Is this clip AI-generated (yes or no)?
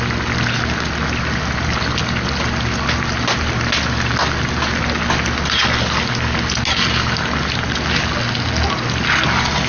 no